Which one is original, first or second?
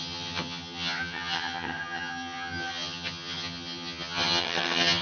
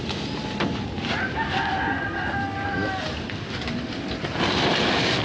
second